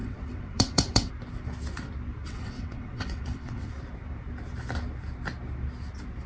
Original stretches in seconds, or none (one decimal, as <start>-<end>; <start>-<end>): 1.1-2.2; 3.7-6.3